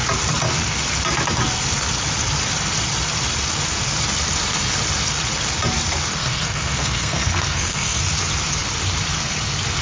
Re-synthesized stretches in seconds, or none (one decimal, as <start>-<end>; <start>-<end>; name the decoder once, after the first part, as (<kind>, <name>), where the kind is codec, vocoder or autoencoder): 6.2-8.0 (codec, SNAC)